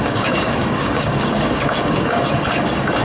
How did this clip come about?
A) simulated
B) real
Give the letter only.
A